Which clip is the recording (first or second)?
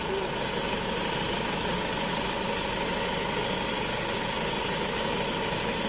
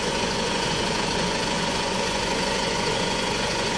first